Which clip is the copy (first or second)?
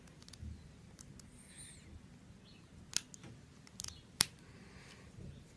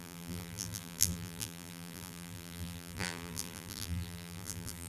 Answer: second